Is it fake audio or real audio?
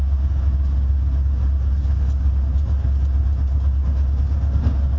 real